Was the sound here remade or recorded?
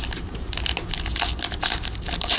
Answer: recorded